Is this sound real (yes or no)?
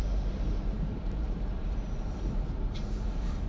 no